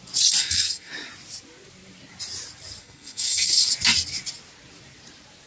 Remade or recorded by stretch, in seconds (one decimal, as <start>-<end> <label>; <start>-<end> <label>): 0.0-0.4 recorded; 0.4-0.9 remade; 0.9-2.8 recorded; 2.8-3.7 remade; 3.7-5.5 recorded